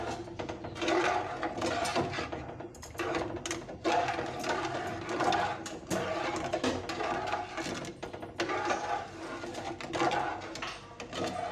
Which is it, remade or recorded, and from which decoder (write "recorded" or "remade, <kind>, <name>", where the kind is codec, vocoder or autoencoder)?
recorded